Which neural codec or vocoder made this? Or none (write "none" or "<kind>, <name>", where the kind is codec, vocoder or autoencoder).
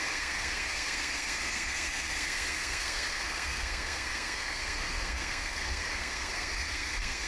codec, SNAC